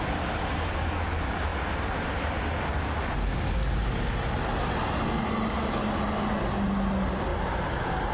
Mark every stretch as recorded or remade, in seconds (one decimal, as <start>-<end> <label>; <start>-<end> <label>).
0.0-7.3 recorded; 7.3-8.1 remade